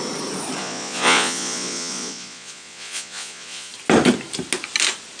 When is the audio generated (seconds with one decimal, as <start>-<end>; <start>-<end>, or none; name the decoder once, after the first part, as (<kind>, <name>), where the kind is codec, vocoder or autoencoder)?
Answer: 0.6-3.7 (vocoder, Vocos)

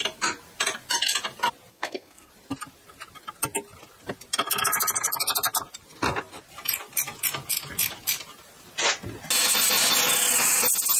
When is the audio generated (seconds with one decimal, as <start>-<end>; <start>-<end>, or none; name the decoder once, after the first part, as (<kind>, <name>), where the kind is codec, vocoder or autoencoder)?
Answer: 1.7-2.3 (codec, SNAC)

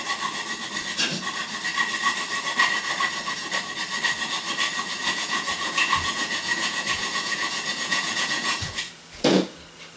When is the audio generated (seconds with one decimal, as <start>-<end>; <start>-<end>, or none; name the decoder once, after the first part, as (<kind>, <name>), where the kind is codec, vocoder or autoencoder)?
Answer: 5.0-9.6 (vocoder, Vocos)

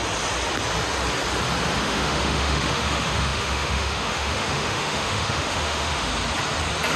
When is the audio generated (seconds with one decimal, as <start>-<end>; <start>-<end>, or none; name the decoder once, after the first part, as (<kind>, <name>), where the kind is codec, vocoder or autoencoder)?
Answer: 1.8-6.1 (autoencoder, DAC-VAE)

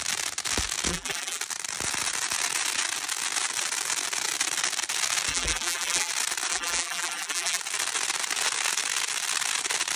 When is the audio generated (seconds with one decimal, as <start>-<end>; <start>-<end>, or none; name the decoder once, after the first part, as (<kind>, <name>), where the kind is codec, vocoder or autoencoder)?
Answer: 0.9-1.4 (vocoder, BigVGAN v2); 5.3-6.1; 6.5-7.6

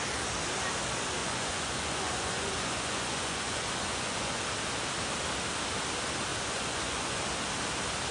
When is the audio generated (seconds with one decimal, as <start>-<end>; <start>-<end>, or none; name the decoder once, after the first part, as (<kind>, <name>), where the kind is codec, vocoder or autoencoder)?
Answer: 1.2-4.4 (vocoder, Vocos); 6.3-7.2

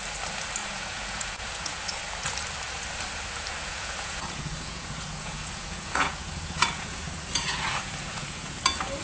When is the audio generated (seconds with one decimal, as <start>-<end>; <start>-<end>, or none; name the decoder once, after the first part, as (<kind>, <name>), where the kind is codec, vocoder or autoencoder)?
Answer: 0.6-1.8 (vocoder, Vocos); 3.6-8.6

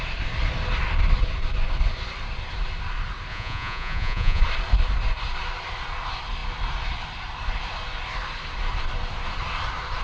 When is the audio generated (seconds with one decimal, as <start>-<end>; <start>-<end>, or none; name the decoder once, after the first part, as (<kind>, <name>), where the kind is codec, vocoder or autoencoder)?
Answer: 3.3-4.4 (vocoder, Vocos)